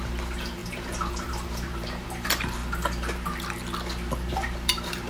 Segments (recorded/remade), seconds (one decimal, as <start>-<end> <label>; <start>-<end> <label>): 0.0-2.6 remade; 2.6-4.3 recorded; 4.3-5.1 remade